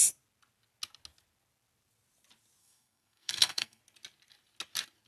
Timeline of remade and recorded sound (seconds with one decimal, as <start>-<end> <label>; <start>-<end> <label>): 0.0-2.6 recorded; 2.6-3.8 remade; 3.8-5.1 recorded